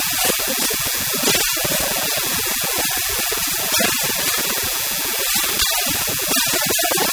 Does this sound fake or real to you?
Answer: real